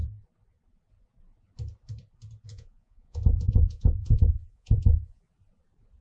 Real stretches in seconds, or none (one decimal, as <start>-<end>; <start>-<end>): 0.0-2.5; 5.2-6.0